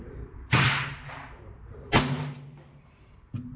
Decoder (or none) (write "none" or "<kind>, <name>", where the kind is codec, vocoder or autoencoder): vocoder, BigVGAN v2